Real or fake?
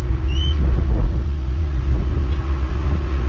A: fake